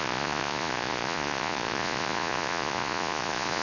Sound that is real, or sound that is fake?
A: fake